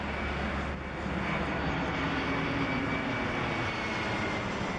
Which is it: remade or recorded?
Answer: recorded